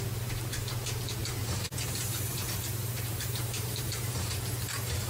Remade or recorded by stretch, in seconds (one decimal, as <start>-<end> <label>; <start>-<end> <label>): 0.0-1.2 recorded; 1.2-4.3 remade; 4.3-5.1 recorded